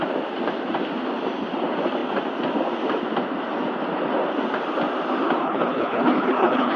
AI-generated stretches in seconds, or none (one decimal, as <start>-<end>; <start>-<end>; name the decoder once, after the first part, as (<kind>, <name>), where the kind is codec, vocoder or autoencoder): 5.4-6.8 (codec, HILCodec)